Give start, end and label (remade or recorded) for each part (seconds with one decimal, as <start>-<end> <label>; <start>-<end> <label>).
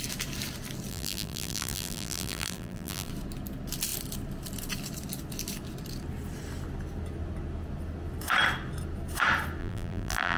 0.0-0.9 recorded; 0.9-3.1 remade; 3.1-9.6 recorded; 9.6-10.4 remade